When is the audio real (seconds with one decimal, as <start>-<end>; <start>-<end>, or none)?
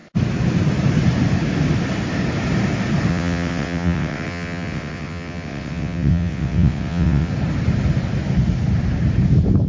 0.0-3.1; 7.3-9.7